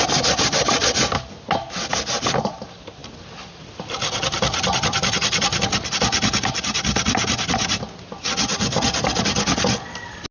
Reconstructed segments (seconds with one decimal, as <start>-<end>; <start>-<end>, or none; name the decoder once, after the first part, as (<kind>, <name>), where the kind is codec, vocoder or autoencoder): 3.0-5.1 (vocoder, BigVGAN v2)